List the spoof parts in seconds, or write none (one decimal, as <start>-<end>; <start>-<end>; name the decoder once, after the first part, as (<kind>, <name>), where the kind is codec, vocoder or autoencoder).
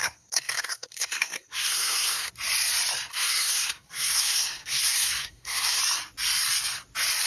0.0-2.3 (codec, SNAC); 3.1-5.8